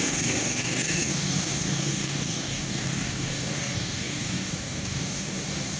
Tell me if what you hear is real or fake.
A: fake